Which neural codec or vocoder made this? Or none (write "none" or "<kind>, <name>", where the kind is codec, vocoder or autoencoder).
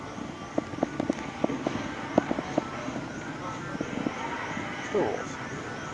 vocoder, BigVGAN v2